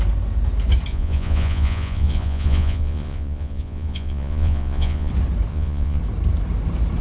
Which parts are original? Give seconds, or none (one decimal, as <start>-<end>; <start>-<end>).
0.0-0.9; 5.1-5.5; 6.0-7.0